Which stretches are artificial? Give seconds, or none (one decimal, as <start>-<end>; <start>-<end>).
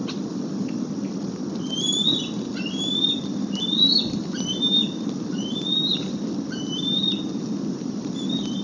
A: none